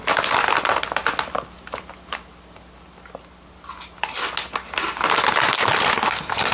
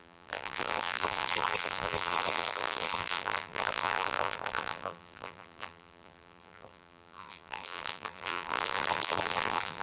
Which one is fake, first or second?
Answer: second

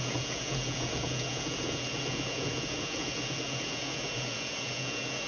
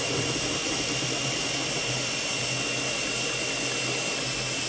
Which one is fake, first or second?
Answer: first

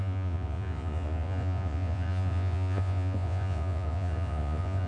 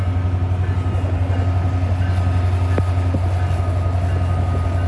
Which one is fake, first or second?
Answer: first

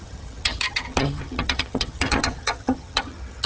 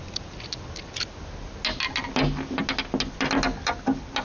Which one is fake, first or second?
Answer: first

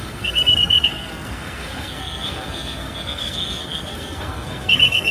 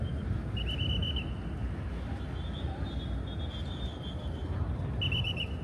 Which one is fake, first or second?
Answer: first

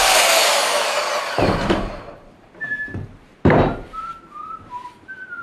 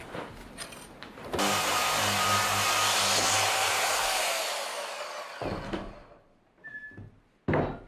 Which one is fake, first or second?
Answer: first